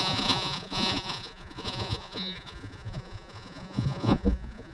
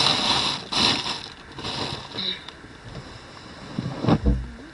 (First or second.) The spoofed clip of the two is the first